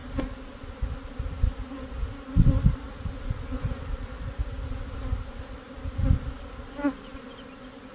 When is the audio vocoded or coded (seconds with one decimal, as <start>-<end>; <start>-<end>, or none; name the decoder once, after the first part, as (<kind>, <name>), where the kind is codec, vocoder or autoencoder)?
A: none